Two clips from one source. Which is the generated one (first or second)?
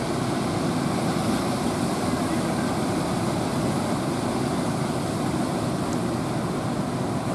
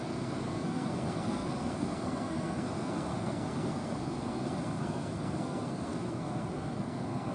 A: second